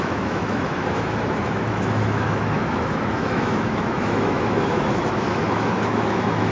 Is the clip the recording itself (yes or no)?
no